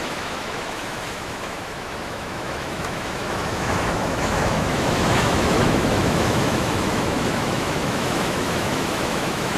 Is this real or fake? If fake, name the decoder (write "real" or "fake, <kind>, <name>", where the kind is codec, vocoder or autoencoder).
fake, autoencoder, DAC-VAE